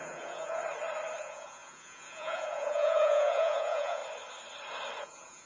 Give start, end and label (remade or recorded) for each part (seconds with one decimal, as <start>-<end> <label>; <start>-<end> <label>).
0.0-0.6 remade; 0.6-1.2 recorded; 1.2-4.0 remade; 4.0-5.0 recorded; 5.0-5.5 remade